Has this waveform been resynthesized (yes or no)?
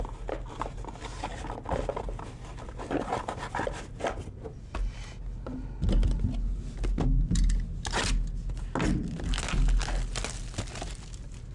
no